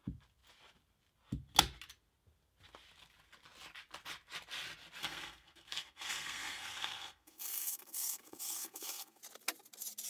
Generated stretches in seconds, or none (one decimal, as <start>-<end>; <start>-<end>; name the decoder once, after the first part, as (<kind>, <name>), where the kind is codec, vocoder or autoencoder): 5.0-9.2 (codec, SNAC)